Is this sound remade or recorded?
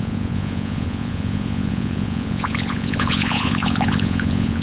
remade